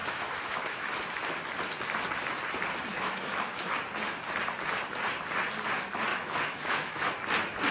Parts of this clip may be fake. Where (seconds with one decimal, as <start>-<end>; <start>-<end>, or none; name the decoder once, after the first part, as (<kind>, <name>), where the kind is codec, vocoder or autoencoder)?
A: 0.0-1.0 (autoencoder, DAC-VAE); 2.9-3.7; 6.1-7.1